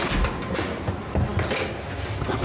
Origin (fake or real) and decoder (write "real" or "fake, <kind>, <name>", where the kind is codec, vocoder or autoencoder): real